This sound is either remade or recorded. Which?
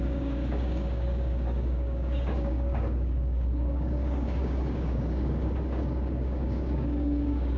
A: remade